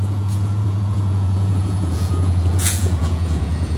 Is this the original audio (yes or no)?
no